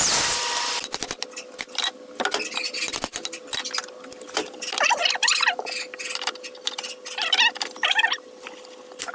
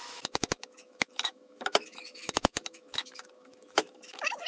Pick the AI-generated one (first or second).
second